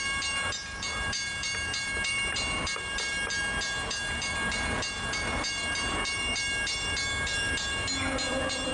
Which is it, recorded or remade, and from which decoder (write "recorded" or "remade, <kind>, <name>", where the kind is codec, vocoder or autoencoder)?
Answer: remade, vocoder, BigVGAN v2